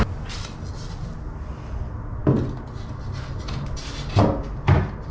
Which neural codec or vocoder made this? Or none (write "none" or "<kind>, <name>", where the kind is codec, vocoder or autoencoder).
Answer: none